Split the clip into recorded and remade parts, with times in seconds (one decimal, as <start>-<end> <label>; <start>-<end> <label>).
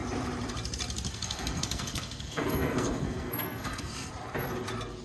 0.0-1.1 recorded; 1.1-4.1 remade; 4.1-5.0 recorded